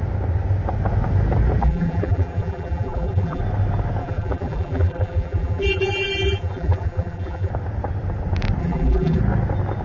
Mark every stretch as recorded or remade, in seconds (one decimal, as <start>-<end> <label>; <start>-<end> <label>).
0.0-1.6 recorded; 1.6-3.4 remade; 3.4-4.0 recorded; 4.0-7.5 remade; 7.5-8.6 recorded; 8.6-9.2 remade; 9.2-9.8 recorded